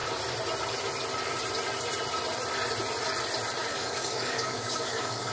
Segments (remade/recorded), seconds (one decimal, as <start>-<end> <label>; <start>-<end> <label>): 0.0-3.7 recorded; 3.7-5.3 remade